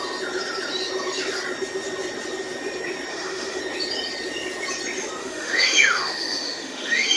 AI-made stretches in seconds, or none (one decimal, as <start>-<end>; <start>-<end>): 3.1-3.6; 5.2-7.2